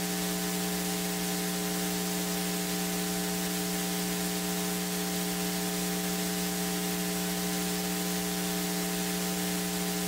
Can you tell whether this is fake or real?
real